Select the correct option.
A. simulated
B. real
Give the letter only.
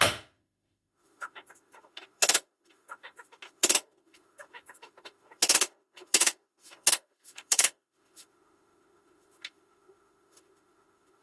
A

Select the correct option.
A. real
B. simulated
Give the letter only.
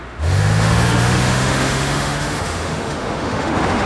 B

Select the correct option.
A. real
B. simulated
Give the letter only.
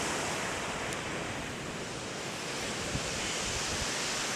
A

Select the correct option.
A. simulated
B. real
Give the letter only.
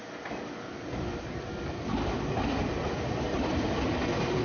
B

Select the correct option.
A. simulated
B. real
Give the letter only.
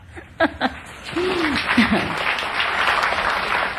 B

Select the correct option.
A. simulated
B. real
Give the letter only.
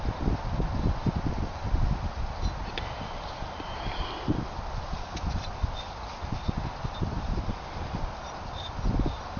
B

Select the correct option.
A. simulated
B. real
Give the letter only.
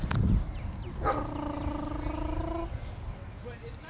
B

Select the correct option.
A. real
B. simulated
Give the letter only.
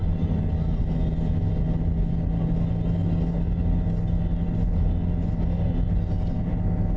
A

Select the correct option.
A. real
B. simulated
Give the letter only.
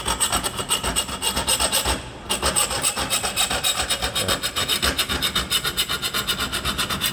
A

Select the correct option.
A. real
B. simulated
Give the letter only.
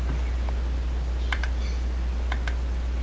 A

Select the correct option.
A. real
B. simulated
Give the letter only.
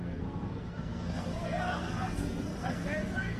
B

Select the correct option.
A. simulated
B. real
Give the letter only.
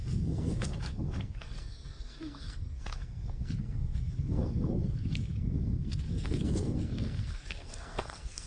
A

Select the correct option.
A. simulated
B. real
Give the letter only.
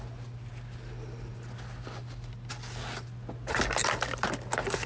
B